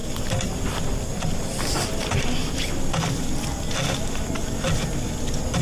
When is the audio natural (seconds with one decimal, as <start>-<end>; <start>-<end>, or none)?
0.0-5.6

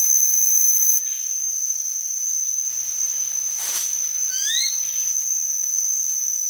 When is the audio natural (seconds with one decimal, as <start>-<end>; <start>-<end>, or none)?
0.0-6.5

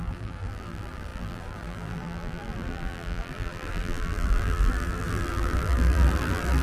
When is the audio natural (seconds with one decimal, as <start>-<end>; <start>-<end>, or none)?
none

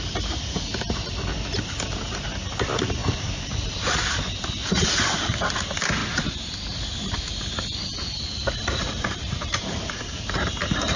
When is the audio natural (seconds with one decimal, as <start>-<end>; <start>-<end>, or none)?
0.0-3.0; 4.4-6.0; 6.8-8.8; 10.5-11.0

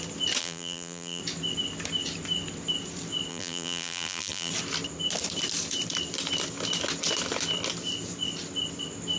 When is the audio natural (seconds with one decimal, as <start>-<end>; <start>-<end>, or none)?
0.0-0.4; 1.2-3.3; 4.5-9.2